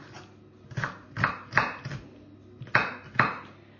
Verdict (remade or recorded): recorded